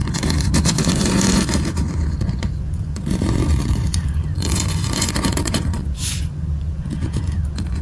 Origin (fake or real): fake